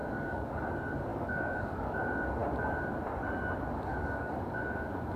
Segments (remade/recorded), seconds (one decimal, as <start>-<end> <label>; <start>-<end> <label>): 0.0-0.5 remade; 0.5-1.1 recorded; 1.1-2.0 remade; 2.0-3.9 recorded; 3.9-5.2 remade